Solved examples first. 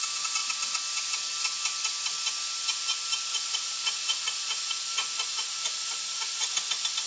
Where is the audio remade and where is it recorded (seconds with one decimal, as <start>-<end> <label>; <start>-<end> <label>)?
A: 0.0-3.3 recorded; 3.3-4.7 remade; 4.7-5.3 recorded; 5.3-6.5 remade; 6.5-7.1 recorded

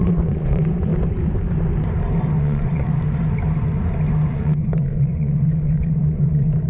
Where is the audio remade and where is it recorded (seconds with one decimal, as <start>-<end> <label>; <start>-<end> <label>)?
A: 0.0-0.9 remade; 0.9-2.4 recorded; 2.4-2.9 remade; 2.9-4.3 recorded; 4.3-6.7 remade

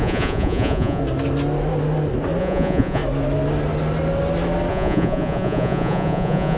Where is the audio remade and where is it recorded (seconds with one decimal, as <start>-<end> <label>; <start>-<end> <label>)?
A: 0.0-1.0 remade; 1.0-2.4 recorded; 2.4-3.0 remade; 3.0-4.7 recorded; 4.7-6.6 remade